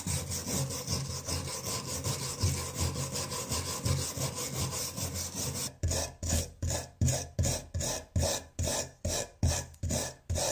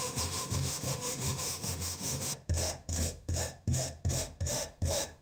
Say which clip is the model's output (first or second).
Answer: second